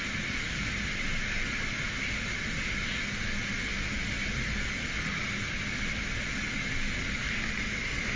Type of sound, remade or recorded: recorded